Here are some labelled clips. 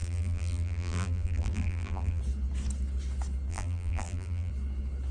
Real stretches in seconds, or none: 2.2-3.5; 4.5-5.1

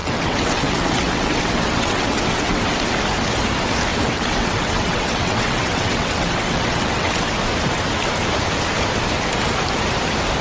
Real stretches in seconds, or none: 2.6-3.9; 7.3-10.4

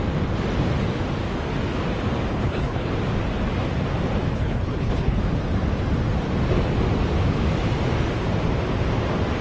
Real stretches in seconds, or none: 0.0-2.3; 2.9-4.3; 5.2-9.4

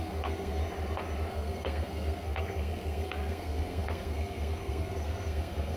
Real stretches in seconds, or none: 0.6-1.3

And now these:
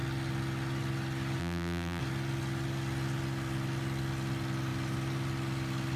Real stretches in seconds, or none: 0.0-1.4; 2.0-6.0

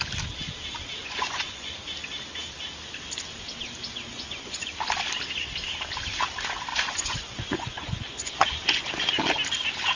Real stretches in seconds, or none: 0.0-1.0; 1.7-4.1; 4.7-6.7; 8.9-10.0